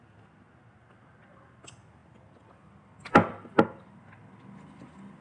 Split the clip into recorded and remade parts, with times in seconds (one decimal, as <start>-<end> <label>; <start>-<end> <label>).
0.0-5.2 recorded